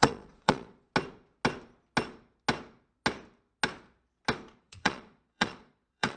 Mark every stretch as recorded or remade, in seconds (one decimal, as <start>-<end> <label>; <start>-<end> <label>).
0.0-0.9 remade; 0.9-4.6 recorded; 4.6-6.2 remade